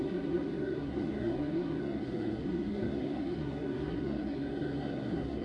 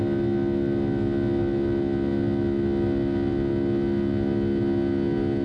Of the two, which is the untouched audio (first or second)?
second